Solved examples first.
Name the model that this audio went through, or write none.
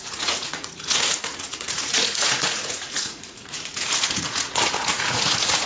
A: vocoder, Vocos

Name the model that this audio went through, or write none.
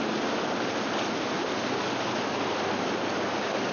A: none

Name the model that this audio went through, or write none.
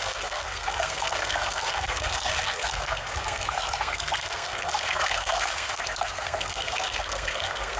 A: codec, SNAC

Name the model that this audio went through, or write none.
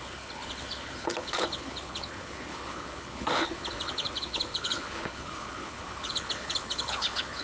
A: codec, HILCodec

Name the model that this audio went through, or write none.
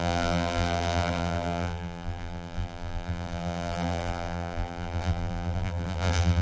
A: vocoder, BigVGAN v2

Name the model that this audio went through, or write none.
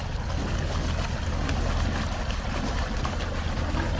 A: none